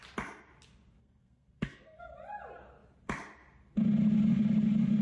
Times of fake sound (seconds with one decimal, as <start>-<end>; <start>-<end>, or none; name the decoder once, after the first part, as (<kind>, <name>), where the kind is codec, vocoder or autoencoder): 1.0-2.0 (codec, SNAC)

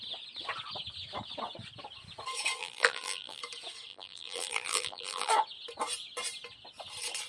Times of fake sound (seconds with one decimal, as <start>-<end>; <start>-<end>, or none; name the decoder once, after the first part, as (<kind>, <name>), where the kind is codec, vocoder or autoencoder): 2.6-3.4 (vocoder, BigVGAN v2); 3.9-5.3

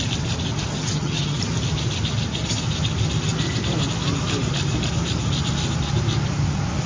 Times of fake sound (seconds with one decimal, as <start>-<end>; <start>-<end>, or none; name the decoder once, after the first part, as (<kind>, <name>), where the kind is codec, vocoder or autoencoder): 0.7-1.4 (vocoder, HiFi-GAN)

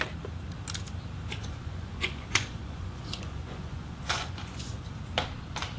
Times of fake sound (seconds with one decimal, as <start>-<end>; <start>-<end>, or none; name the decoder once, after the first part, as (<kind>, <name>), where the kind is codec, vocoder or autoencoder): 1.4-4.9 (vocoder, Vocos)

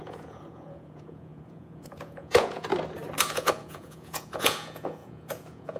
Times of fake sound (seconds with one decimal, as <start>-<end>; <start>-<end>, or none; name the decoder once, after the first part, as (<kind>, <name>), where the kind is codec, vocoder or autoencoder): 0.0-2.7 (vocoder, Vocos); 3.2-5.8

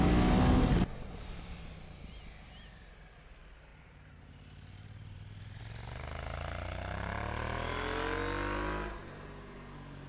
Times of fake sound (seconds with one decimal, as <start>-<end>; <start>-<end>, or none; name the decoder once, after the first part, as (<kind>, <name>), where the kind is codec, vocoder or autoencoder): 3.7-5.6 (vocoder, BigVGAN v2)

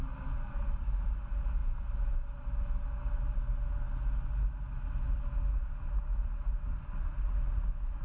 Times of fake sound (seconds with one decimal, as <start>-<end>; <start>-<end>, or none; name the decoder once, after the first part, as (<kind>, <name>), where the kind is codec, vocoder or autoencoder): none

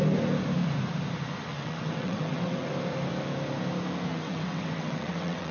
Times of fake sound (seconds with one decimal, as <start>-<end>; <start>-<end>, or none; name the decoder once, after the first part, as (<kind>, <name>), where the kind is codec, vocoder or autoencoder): 1.5-2.7 (vocoder, WaveNeXt); 4.1-5.5